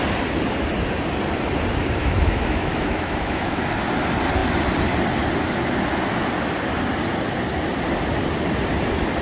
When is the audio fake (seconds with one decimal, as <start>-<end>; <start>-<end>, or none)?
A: 2.0-3.6